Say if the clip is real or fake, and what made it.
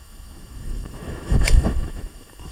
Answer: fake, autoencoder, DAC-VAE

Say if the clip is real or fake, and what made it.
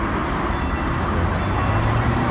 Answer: real